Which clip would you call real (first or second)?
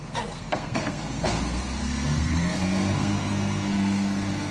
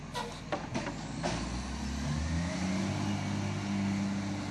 second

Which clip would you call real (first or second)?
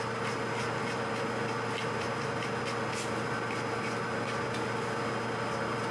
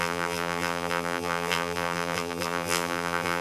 first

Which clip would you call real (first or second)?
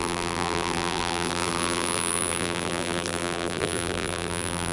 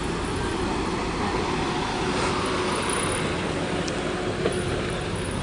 second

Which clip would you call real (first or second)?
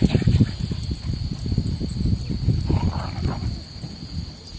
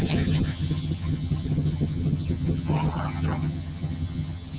first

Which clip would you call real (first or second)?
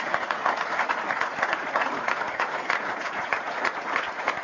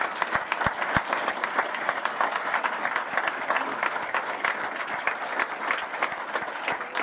second